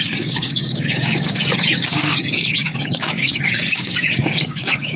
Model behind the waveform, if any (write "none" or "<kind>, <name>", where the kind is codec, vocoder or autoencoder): codec, DAC